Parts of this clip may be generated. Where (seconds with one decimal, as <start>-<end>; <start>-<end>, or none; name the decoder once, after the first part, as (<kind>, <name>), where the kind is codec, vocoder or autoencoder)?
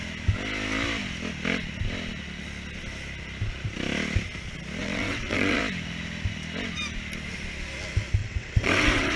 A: 4.8-5.6 (vocoder, WaveNeXt); 8.2-9.2